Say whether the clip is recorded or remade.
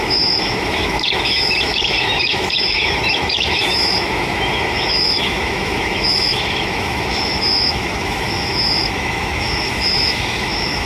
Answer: remade